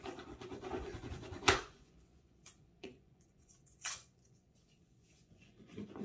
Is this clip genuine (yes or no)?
no